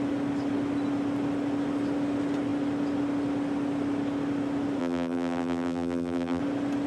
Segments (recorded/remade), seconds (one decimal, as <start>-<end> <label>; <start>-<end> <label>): 0.0-4.8 recorded; 4.8-6.4 remade; 6.4-6.9 recorded